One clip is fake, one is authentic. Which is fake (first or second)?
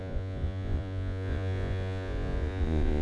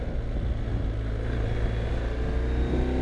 first